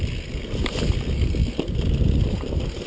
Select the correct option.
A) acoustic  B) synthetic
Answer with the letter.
A